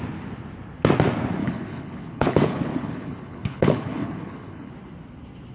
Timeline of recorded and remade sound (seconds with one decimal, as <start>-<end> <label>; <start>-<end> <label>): 0.0-1.4 recorded; 1.4-4.7 remade; 4.7-5.5 recorded